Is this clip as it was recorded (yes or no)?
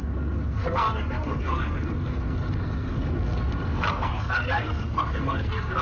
no